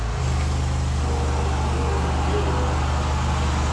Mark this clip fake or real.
real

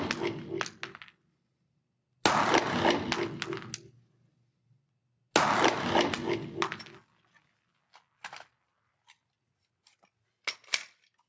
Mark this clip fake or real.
real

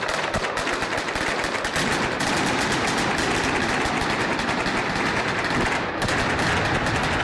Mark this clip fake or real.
real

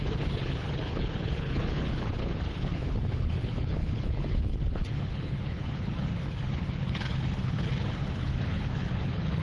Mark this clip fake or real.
fake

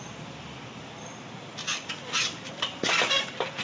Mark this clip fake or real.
fake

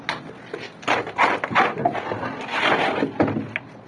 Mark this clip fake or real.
real